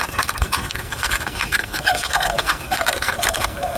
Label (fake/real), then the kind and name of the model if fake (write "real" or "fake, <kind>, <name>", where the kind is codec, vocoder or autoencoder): fake, codec, SNAC